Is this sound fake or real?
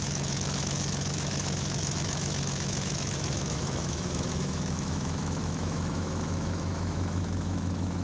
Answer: fake